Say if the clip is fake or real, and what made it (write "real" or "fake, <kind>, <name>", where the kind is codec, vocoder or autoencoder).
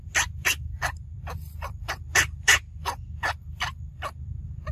real